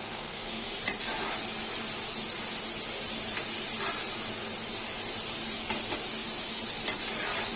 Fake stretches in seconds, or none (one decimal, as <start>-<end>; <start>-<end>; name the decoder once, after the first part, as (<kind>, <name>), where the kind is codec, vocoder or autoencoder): 0.0-0.7 (codec, SNAC)